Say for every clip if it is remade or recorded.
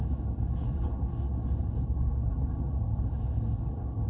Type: remade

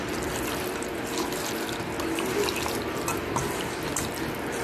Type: recorded